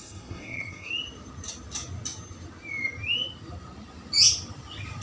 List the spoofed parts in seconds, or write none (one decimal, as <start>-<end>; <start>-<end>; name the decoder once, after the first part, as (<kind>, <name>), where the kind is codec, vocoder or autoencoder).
0.0-0.9 (codec, SNAC)